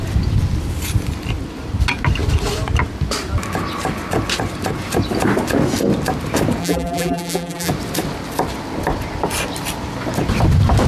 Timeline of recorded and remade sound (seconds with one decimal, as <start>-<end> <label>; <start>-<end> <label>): 0.0-6.6 recorded; 6.6-7.7 remade; 7.7-10.9 recorded

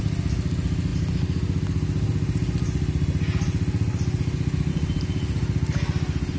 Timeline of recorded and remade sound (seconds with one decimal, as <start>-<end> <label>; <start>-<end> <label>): 0.0-6.4 recorded

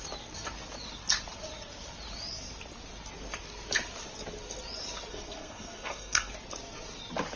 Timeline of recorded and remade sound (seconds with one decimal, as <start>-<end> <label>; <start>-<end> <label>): 0.0-5.1 recorded; 5.1-6.3 remade; 6.3-7.4 recorded

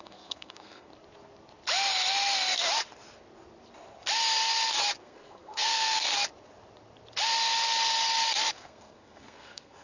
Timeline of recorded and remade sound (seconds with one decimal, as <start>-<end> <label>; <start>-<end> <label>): 0.0-0.9 remade; 0.9-5.0 recorded; 5.0-6.1 remade; 6.1-8.5 recorded; 8.5-9.8 remade

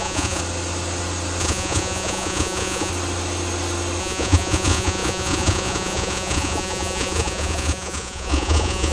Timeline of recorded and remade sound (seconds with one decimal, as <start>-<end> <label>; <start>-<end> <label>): 0.0-0.4 remade; 0.4-1.4 recorded; 1.4-2.9 remade; 2.9-4.0 recorded; 4.0-8.9 remade

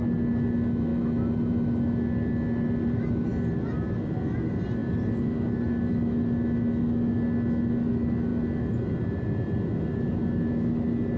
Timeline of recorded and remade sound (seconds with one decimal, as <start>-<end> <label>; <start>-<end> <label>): 0.0-11.2 recorded

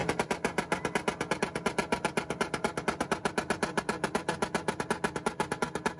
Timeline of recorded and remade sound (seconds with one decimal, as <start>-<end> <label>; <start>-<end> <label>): 0.0-1.4 recorded; 1.4-6.0 remade

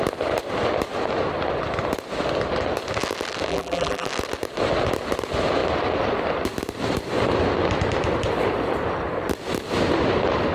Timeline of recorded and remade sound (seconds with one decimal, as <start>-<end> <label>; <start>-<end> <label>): 0.0-3.5 recorded; 3.5-4.1 remade; 4.1-10.5 recorded